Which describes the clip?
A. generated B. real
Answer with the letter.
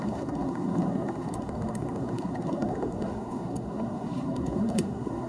A